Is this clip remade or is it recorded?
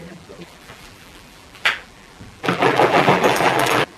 remade